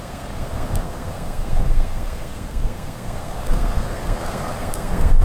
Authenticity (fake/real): fake